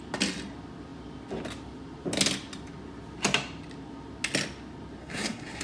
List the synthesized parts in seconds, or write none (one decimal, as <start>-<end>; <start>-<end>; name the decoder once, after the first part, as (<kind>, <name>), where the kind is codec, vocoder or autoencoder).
5.0-5.6 (codec, SNAC)